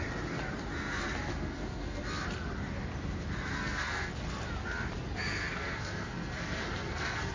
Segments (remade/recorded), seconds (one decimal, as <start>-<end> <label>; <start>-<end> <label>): 0.0-1.3 recorded; 1.3-2.0 remade; 2.0-3.5 recorded; 3.5-4.1 remade; 4.1-5.3 recorded; 5.3-7.3 remade